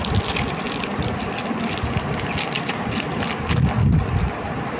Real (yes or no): yes